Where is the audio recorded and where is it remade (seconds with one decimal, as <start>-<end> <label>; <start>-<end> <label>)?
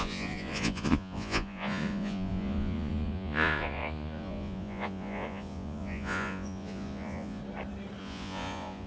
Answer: 0.0-7.4 remade; 7.4-8.0 recorded; 8.0-8.9 remade